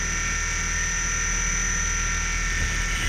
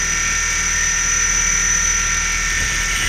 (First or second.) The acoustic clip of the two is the first